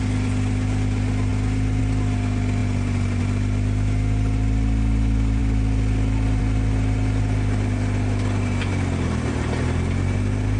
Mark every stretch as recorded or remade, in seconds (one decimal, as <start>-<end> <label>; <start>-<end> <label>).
0.0-10.6 recorded